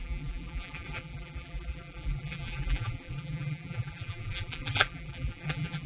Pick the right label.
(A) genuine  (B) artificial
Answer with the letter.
B